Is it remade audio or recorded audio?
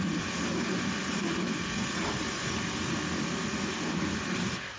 recorded